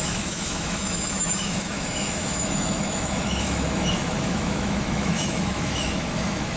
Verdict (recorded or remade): remade